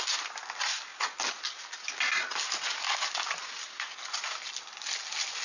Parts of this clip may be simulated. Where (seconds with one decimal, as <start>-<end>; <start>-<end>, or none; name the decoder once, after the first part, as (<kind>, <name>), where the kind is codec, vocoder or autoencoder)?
none